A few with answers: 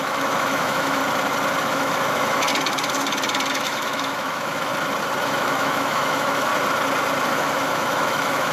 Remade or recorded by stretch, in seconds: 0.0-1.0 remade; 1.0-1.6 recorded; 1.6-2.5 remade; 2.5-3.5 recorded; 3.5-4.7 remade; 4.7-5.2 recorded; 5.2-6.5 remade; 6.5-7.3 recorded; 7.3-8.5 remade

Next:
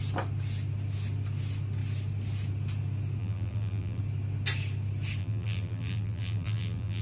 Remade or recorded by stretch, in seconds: 0.0-3.2 recorded; 3.2-4.0 remade; 4.0-5.2 recorded; 5.2-7.0 remade

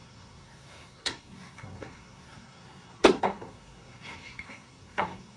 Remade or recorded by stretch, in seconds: 0.0-5.4 remade

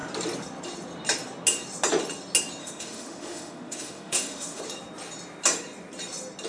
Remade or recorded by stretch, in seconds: 0.0-2.6 recorded; 2.6-4.6 remade; 4.6-6.5 recorded

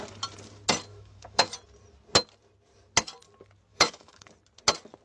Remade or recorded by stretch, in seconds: 0.0-0.9 recorded; 0.9-1.5 remade; 1.5-3.7 recorded; 3.7-4.3 remade; 4.3-5.0 recorded

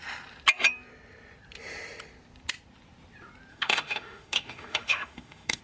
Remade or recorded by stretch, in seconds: 0.0-3.5 recorded; 3.5-5.6 remade

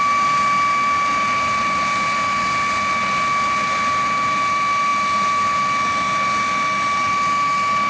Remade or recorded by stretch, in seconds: 0.0-7.9 recorded